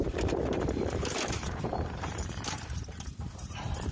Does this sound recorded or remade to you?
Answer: remade